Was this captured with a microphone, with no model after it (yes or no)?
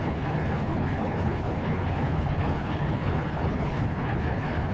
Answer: no